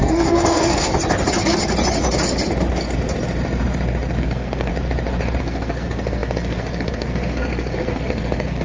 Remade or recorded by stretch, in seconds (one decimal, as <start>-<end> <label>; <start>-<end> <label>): 0.0-0.9 remade; 0.9-4.2 recorded; 4.2-4.7 remade; 4.7-5.4 recorded; 5.4-8.6 remade